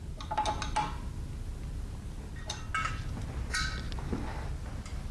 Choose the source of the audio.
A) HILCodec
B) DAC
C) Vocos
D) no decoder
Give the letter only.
D